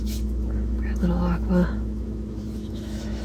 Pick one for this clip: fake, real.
fake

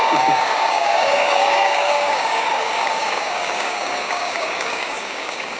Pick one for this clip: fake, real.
fake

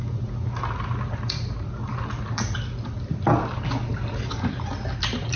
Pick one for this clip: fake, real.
real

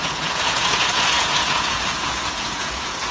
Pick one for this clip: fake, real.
fake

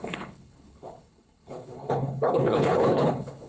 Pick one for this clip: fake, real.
fake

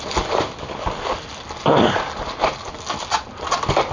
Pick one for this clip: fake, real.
real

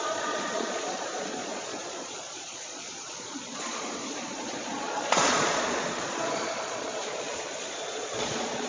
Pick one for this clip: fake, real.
fake